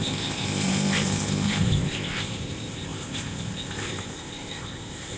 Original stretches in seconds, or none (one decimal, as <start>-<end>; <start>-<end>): none